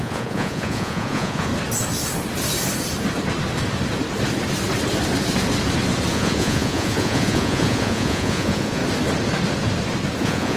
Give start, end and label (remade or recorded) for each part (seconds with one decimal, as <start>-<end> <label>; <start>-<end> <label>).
0.0-1.5 remade; 1.5-6.1 recorded; 6.1-8.8 remade; 8.8-10.2 recorded; 10.2-10.6 remade